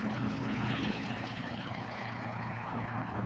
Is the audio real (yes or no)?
no